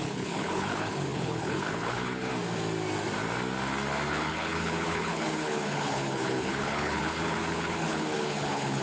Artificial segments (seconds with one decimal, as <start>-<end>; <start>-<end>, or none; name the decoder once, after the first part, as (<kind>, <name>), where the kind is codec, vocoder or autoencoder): 0.0-2.3 (codec, HILCodec); 4.1-8.8